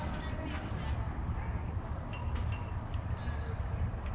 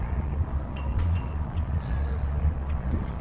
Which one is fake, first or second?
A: second